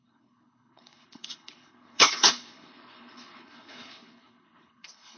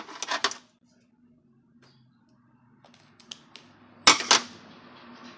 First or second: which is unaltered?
second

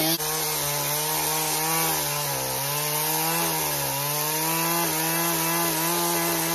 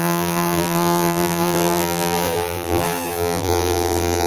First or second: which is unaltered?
first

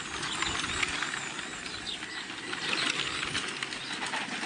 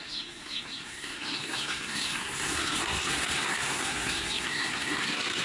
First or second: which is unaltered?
first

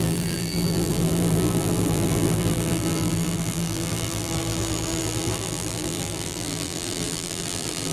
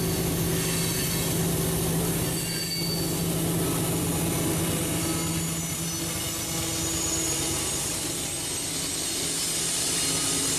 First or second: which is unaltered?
second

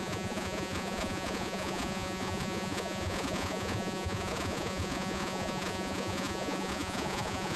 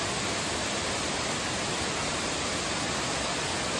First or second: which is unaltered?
second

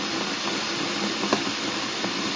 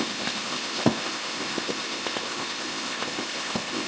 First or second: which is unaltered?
first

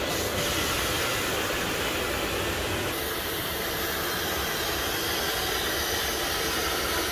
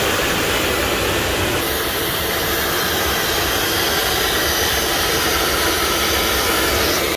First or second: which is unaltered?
first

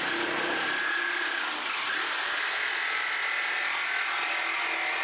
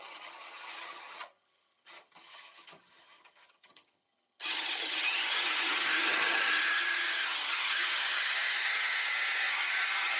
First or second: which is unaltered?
first